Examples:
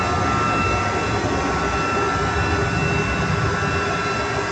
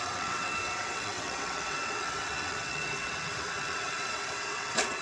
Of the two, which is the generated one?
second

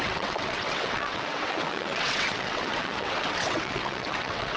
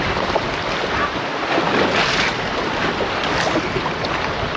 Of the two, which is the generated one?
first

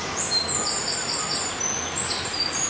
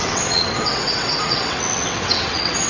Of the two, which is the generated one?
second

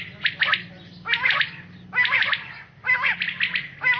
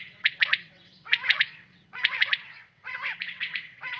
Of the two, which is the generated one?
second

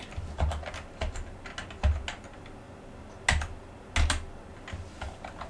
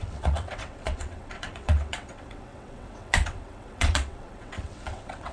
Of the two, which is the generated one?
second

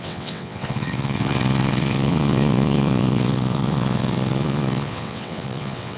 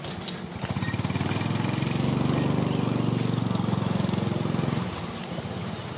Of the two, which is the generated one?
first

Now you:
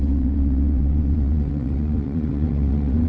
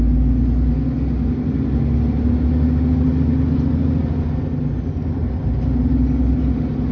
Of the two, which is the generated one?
first